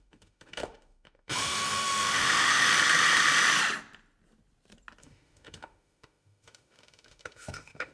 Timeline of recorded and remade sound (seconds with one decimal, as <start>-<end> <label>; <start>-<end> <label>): 0.0-2.7 remade; 2.7-5.0 recorded; 5.0-7.9 remade